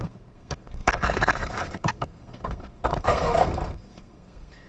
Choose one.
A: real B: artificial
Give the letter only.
B